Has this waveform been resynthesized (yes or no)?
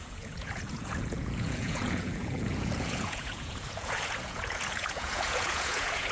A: yes